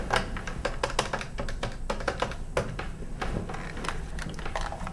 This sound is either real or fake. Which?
real